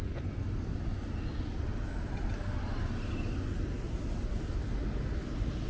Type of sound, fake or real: real